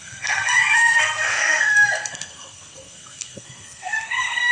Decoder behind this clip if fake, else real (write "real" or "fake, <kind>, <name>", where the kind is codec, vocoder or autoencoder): fake, codec, SNAC